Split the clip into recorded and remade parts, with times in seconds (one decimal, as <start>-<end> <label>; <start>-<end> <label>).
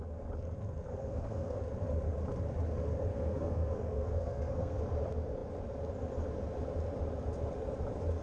0.0-0.9 recorded; 0.9-1.6 remade; 1.6-3.1 recorded; 3.1-4.8 remade; 4.8-8.2 recorded